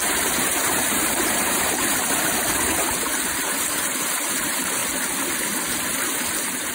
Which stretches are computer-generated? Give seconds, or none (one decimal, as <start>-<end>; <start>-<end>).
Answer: 0.0-4.8; 6.3-6.7